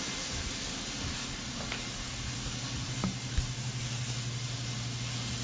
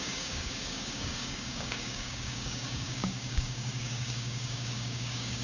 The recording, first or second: first